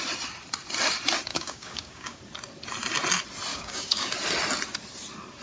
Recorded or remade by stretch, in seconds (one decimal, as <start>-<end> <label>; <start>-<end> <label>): 0.0-1.3 recorded; 1.3-2.2 remade; 2.2-3.5 recorded; 3.5-4.1 remade; 4.1-5.4 recorded